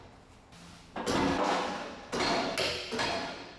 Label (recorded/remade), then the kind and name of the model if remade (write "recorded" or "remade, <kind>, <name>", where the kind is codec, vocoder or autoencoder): recorded